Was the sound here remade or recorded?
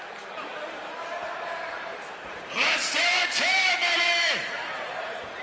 remade